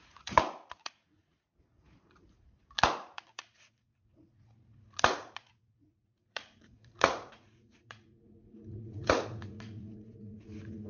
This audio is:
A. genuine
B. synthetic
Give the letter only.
B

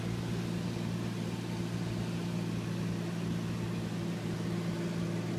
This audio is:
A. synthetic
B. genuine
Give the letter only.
B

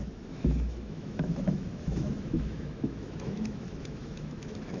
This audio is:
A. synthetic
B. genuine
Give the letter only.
A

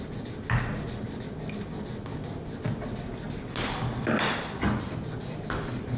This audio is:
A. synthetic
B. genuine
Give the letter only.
B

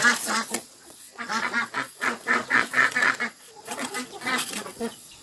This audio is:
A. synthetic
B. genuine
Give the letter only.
A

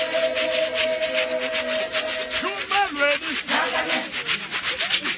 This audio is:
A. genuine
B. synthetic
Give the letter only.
A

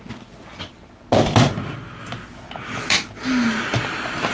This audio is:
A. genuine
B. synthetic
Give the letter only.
A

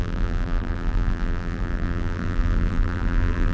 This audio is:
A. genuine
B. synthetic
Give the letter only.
B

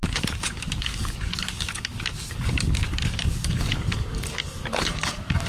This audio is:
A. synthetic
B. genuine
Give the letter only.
A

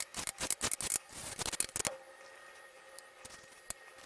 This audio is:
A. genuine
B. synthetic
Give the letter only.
A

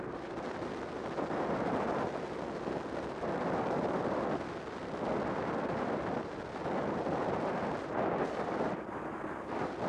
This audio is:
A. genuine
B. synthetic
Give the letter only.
B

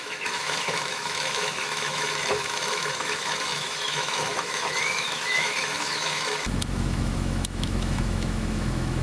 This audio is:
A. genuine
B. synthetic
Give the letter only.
B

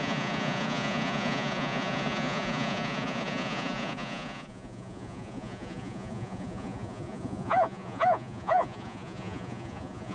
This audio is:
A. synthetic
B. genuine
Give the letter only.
A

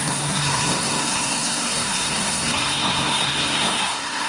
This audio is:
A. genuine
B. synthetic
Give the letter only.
B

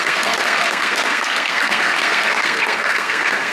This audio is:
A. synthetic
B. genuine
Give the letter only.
A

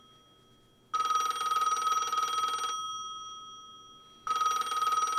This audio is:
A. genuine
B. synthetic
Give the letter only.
A